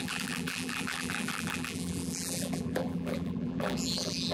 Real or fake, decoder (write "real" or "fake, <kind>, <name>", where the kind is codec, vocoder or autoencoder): fake, vocoder, BigVGAN v2